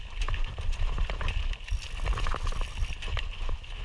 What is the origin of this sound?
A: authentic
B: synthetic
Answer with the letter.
A